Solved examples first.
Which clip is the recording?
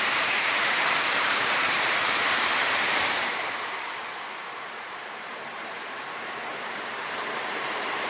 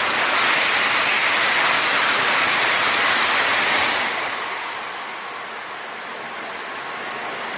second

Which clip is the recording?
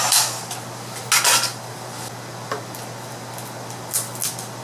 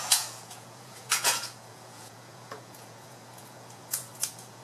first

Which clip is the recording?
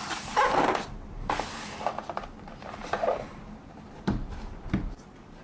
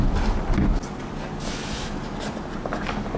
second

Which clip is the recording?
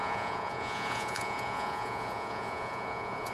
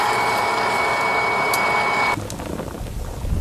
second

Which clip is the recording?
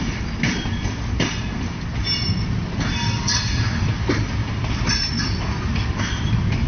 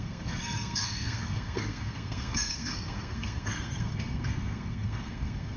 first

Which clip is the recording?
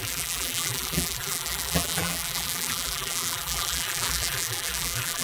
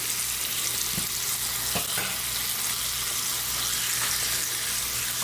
second